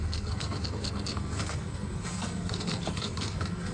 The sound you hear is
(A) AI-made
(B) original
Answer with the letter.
A